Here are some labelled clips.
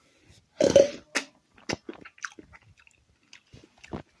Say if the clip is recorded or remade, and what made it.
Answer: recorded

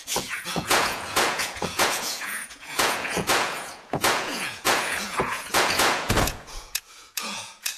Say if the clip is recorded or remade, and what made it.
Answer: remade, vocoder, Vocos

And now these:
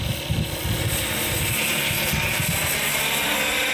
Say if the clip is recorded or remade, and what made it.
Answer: recorded